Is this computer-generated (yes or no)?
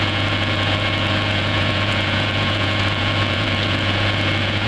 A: yes